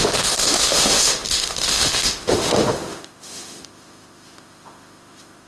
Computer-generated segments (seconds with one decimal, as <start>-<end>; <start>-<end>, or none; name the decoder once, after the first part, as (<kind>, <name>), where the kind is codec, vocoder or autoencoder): 0.0-5.5 (autoencoder, DAC-VAE)